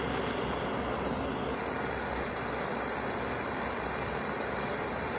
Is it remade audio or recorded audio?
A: recorded